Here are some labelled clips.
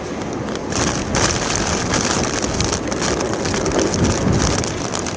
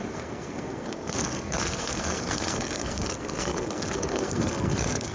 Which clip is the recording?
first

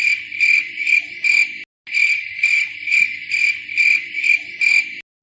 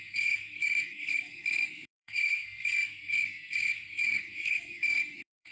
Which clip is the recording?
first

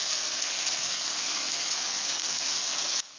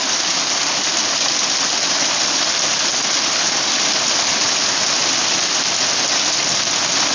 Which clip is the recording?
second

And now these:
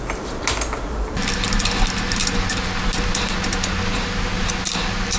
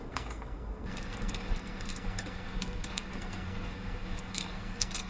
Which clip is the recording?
first